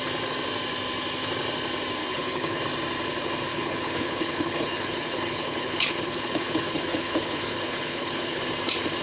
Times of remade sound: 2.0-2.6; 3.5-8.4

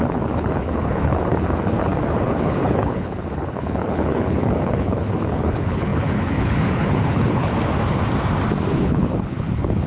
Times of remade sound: 0.0-7.5; 8.5-9.9